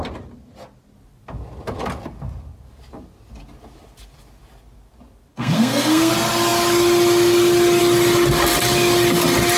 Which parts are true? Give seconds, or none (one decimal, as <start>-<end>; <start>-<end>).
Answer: 0.0-5.3; 6.1-9.6